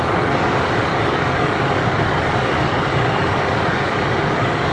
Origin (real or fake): fake